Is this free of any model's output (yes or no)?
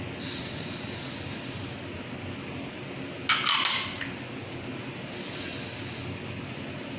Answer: yes